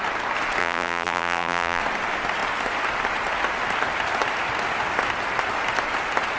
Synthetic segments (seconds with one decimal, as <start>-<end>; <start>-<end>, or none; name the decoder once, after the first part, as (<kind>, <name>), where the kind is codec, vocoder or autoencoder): 0.6-1.8 (vocoder, BigVGAN v2)